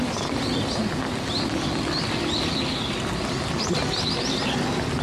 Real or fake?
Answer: real